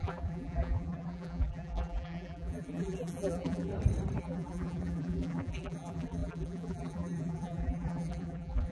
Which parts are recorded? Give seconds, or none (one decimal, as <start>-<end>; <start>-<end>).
3.7-4.2